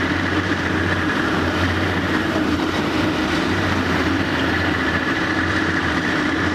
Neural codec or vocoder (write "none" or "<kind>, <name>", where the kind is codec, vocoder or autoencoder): vocoder, BigVGAN v2